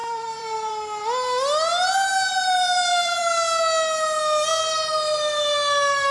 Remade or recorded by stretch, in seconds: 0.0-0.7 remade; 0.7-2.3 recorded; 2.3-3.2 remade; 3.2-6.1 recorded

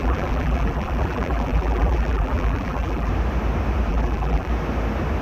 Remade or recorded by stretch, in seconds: 0.0-3.1 remade; 3.1-3.9 recorded; 3.9-4.5 remade; 4.5-5.2 recorded

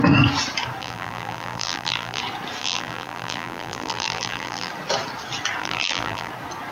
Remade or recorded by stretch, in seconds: 0.0-0.8 recorded; 0.8-2.2 remade; 2.2-2.6 recorded; 2.6-4.7 remade; 4.7-5.6 recorded; 5.6-6.3 remade; 6.3-6.7 recorded

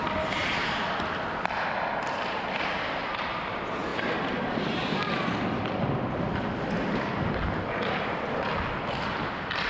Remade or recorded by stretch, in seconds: 0.0-0.4 remade; 0.4-3.2 recorded; 3.2-9.7 remade